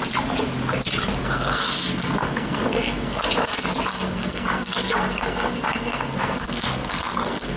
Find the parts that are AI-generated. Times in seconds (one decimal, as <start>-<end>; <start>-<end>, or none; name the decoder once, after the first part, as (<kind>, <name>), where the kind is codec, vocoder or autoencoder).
1.2-3.3 (codec, SNAC); 3.9-7.6